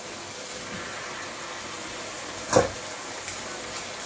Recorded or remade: recorded